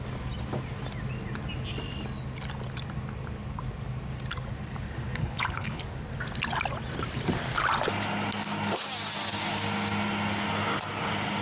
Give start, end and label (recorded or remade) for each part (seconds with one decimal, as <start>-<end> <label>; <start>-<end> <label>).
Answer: 0.0-5.2 recorded; 5.2-5.8 remade; 5.8-11.4 recorded